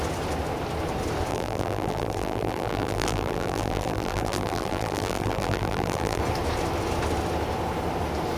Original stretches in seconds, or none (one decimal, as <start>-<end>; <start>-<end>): 0.0-1.3; 6.2-8.4